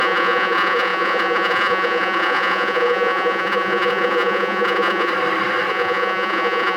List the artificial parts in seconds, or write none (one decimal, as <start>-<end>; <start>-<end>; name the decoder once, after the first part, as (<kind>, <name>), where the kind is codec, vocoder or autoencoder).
0.0-5.1 (vocoder, Vocos); 5.7-6.8